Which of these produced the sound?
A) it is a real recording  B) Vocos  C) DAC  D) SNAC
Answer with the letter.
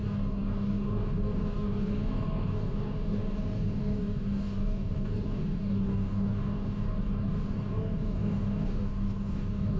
C